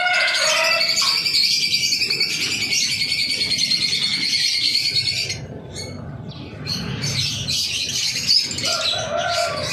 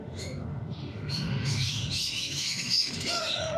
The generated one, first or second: second